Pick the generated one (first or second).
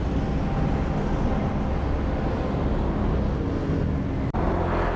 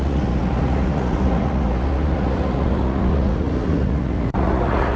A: second